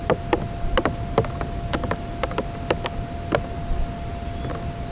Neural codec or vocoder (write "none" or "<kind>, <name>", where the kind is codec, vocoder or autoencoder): none